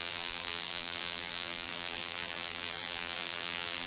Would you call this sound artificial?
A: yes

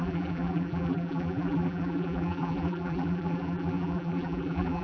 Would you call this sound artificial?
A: yes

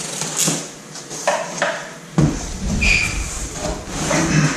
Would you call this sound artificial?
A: no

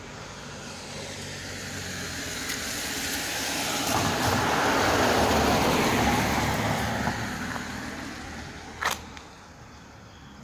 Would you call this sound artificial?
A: no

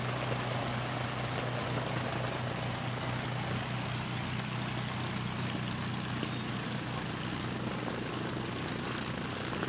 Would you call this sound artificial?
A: no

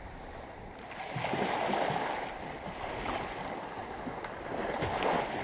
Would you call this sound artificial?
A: no